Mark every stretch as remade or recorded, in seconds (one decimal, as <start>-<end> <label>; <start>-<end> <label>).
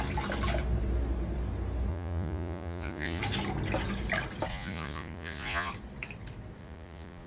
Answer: 0.0-1.9 recorded; 1.9-3.2 remade; 3.2-4.5 recorded; 4.5-5.7 remade; 5.7-6.6 recorded; 6.6-7.3 remade